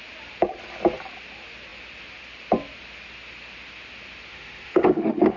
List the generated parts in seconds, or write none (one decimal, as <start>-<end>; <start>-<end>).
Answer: 4.3-5.4